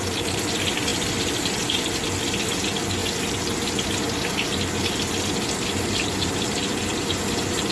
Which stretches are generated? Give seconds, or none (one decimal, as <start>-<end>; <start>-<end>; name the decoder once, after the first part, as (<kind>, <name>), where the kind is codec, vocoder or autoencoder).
none